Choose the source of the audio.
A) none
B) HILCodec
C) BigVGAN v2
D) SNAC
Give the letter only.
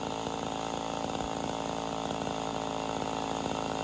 A